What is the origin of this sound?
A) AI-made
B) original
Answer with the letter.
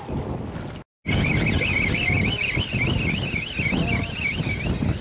B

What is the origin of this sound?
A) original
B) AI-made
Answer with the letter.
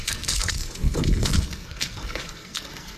B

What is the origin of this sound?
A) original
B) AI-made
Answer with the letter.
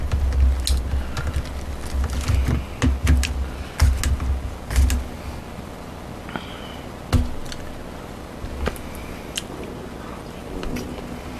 A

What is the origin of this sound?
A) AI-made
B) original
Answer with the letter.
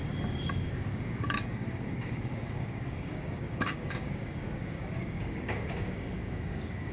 A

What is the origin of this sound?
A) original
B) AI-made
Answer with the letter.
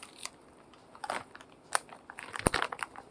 A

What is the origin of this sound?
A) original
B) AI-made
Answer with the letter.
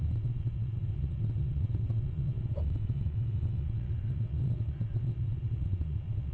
B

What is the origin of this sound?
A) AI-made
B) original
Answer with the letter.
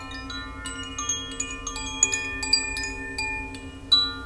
B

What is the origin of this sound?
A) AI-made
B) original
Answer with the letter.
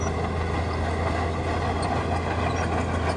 B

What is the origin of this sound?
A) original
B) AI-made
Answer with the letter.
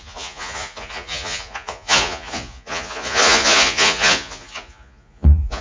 B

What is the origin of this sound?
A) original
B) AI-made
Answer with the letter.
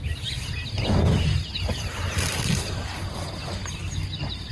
A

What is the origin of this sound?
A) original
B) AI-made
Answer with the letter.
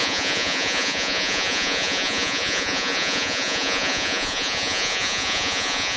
B